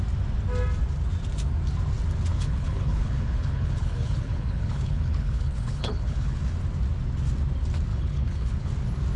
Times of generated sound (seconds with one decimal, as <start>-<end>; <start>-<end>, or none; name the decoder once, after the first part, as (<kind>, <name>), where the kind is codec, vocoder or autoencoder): 2.3-6.4 (codec, HILCodec); 7.9-8.7